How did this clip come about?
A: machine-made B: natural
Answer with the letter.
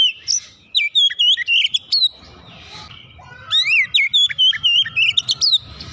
B